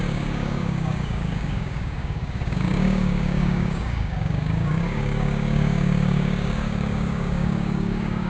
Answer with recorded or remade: remade